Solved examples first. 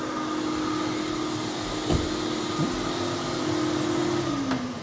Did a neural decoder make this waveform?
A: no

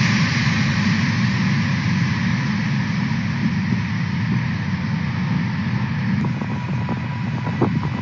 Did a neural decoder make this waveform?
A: no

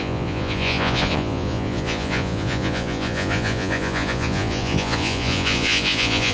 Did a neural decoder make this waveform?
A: yes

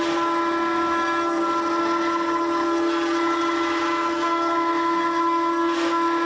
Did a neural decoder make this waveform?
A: no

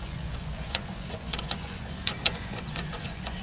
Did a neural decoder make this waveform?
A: yes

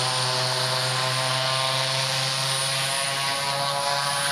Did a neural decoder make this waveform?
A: no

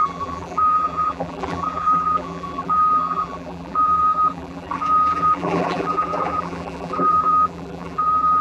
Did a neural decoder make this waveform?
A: yes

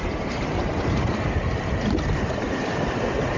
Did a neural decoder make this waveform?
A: yes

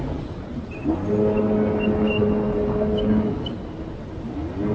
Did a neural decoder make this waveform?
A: no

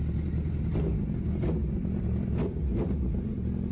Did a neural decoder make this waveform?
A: no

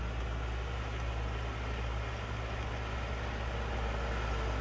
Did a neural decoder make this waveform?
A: no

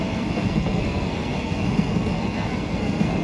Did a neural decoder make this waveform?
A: yes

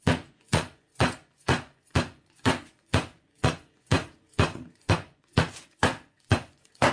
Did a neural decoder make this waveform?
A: yes